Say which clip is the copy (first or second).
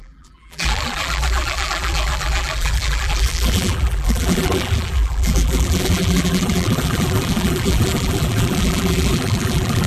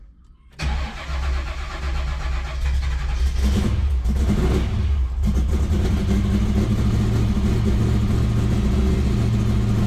first